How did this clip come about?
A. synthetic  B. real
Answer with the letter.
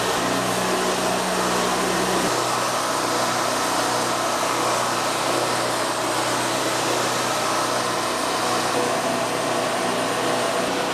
B